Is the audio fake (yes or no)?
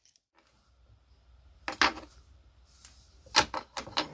no